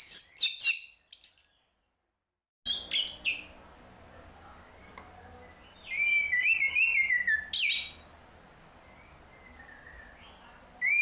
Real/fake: real